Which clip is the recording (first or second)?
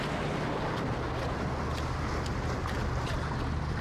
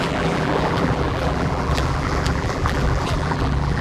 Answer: first